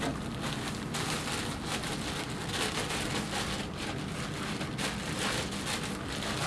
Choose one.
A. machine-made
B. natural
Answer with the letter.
B